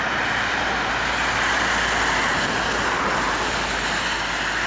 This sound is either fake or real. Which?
real